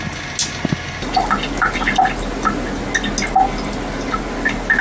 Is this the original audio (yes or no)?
yes